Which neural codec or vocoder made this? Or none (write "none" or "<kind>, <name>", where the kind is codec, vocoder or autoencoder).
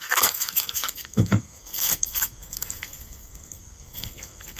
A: codec, SNAC